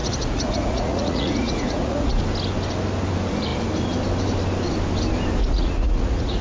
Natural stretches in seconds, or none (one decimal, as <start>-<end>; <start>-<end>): 2.2-5.4